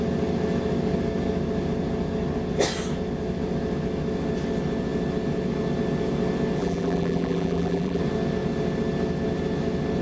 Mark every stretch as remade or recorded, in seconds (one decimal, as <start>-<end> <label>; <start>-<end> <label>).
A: 0.0-6.6 recorded; 6.6-8.0 remade; 8.0-10.0 recorded